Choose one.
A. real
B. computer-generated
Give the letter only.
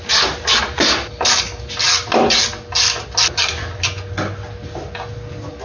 A